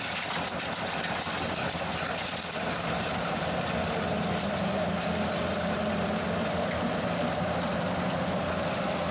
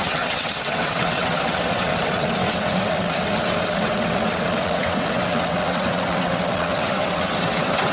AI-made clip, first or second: second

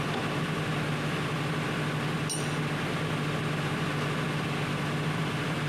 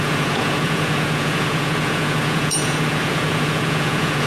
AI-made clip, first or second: second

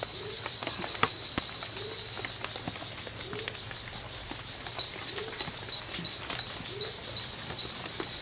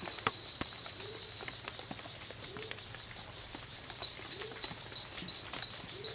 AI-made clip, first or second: second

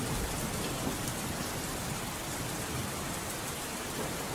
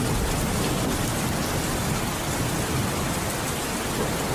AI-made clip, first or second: first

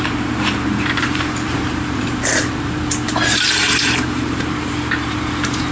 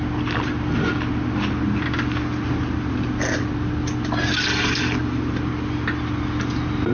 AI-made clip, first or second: first